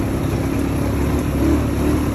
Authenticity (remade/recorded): recorded